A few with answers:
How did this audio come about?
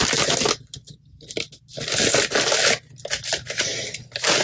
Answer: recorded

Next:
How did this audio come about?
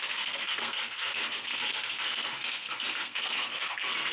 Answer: remade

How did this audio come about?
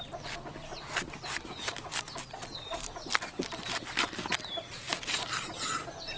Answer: recorded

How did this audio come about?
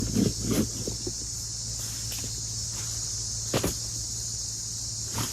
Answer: recorded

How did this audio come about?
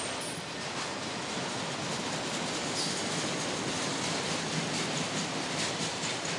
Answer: recorded